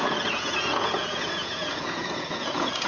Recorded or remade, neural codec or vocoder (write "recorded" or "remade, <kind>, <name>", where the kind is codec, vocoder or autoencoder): remade, vocoder, Vocos